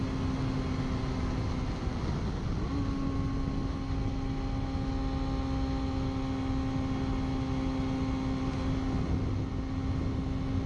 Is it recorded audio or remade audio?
recorded